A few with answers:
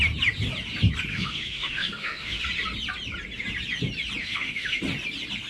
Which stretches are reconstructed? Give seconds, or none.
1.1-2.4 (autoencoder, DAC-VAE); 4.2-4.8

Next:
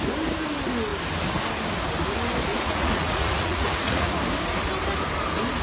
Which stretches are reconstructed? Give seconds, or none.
2.5-4.2 (vocoder, Vocos)

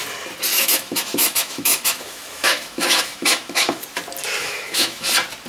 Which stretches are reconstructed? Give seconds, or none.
0.5-3.8 (autoencoder, DAC-VAE); 4.4-5.1

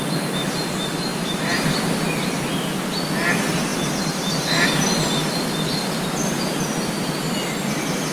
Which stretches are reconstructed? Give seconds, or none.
1.1-1.8 (vocoder, BigVGAN v2)

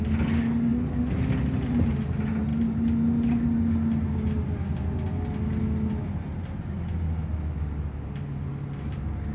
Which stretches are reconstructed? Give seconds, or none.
none

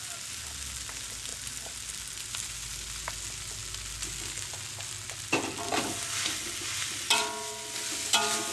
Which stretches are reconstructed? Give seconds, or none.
none

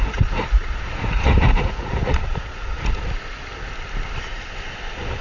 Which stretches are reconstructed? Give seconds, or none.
0.0-3.0 (vocoder, Vocos)

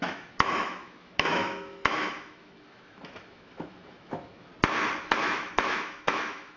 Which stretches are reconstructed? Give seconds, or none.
0.0-4.5 (autoencoder, DAC-VAE); 5.0-6.6